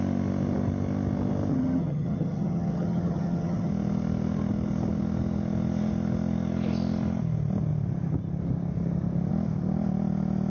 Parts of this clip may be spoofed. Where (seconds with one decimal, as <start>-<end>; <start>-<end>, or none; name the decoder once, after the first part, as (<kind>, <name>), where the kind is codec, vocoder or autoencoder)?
1.5-3.7 (vocoder, HiFi-GAN)